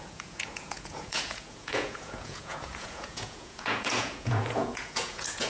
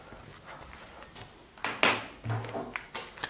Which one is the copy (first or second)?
first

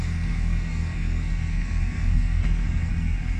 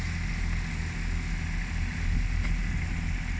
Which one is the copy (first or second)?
first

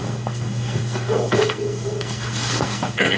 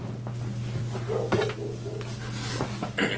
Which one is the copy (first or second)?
first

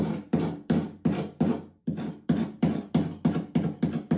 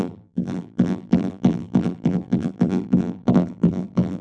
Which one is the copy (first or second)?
second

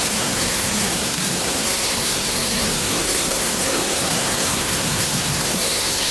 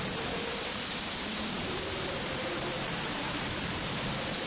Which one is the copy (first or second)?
first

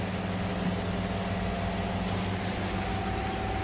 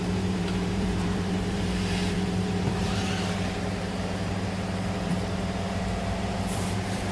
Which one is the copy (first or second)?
second